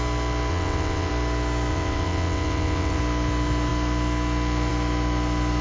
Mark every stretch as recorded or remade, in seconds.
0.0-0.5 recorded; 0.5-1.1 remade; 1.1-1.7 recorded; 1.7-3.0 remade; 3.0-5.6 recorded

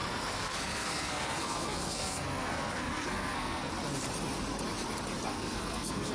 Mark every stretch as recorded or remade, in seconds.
0.0-3.7 remade; 3.7-5.3 recorded; 5.3-6.1 remade